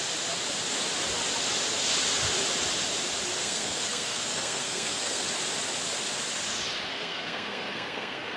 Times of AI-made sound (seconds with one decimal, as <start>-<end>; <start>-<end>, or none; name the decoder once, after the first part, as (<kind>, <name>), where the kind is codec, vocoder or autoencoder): 3.4-5.2 (codec, SNAC); 6.9-8.4